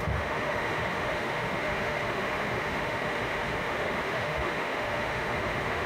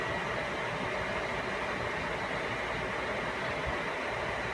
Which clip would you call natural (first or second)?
second